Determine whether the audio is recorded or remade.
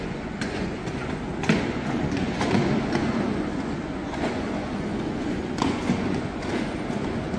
remade